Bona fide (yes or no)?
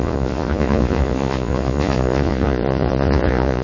no